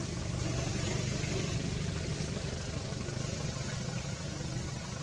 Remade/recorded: recorded